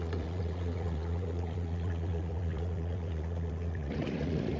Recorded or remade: remade